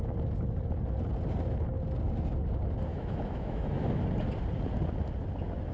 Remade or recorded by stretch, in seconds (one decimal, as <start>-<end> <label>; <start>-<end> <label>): 0.0-2.9 recorded; 2.9-4.0 remade; 4.0-5.7 recorded